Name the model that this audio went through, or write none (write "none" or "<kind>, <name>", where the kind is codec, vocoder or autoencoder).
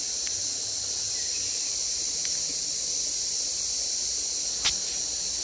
none